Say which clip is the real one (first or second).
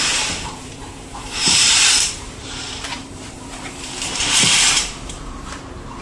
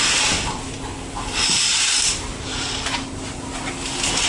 second